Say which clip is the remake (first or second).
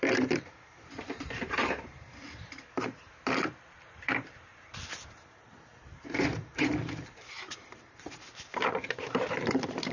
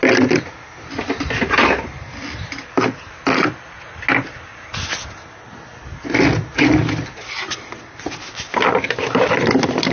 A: first